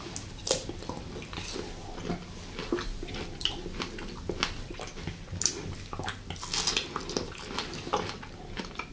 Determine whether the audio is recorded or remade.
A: recorded